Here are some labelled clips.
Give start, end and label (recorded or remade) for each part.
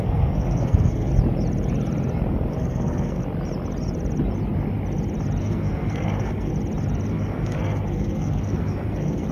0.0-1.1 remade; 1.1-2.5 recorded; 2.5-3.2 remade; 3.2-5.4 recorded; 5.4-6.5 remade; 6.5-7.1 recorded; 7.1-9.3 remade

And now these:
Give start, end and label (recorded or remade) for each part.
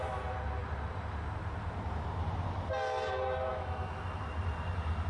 0.0-3.5 recorded; 3.5-4.2 remade; 4.2-5.1 recorded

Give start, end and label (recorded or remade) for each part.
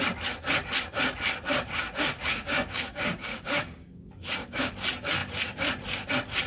0.0-2.2 recorded; 2.2-4.7 remade; 4.7-6.5 recorded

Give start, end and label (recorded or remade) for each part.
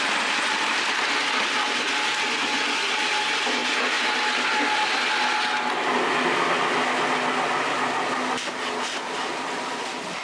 0.0-10.2 recorded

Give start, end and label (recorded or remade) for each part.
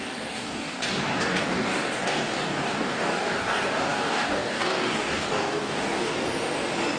0.0-6.1 remade; 6.1-7.0 recorded